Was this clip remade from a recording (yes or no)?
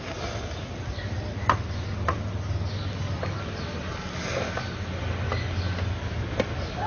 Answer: no